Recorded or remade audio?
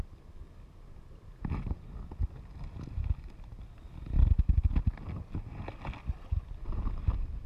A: recorded